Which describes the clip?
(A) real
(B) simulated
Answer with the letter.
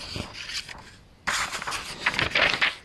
A